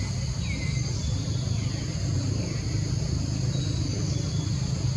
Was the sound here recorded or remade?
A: recorded